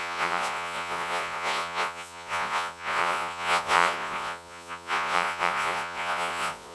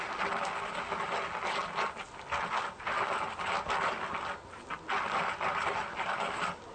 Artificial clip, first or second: first